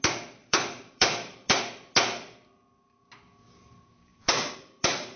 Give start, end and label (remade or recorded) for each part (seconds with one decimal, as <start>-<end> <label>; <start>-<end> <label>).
0.0-0.4 recorded; 0.4-1.6 remade; 1.6-4.1 recorded; 4.1-5.2 remade